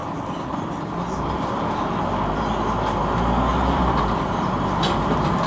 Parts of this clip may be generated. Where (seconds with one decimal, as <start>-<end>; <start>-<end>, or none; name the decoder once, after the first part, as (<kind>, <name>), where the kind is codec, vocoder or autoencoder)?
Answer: 0.0-1.6 (vocoder, BigVGAN v2); 3.5-4.9